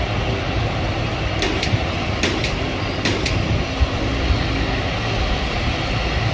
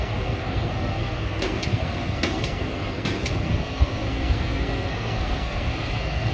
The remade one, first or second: second